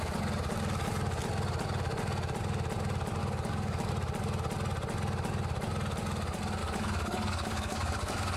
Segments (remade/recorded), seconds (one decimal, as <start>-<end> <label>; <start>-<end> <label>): 0.0-3.2 recorded; 3.2-3.9 remade; 3.9-6.6 recorded; 6.6-8.4 remade